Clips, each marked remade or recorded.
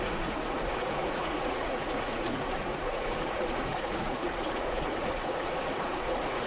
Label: remade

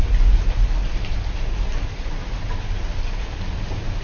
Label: recorded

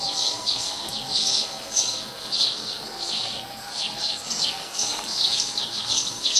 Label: remade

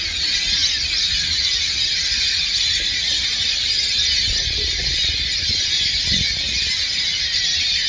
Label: recorded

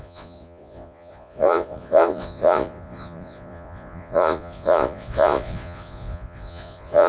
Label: remade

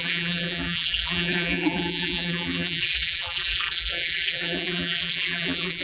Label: remade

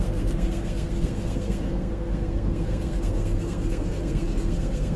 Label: remade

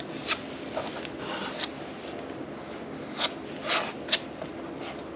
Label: recorded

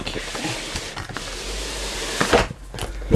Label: recorded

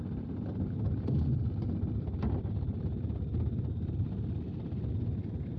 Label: recorded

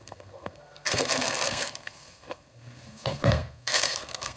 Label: remade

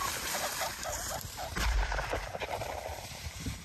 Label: remade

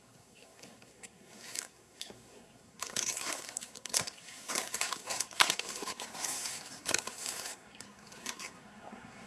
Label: remade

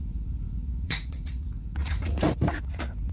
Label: remade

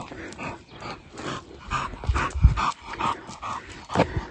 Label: recorded